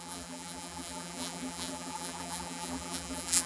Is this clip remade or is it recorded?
remade